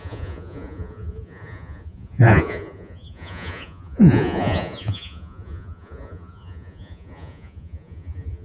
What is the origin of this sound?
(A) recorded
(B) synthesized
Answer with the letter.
B